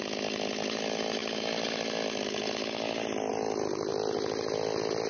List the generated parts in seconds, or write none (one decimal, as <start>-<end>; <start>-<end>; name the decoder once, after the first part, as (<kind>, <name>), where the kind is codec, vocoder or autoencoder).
none